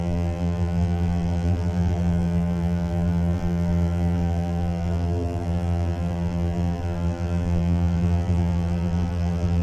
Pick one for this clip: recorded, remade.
remade